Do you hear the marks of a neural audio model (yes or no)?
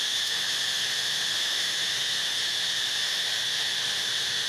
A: yes